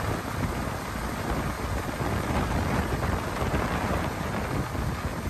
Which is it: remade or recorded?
recorded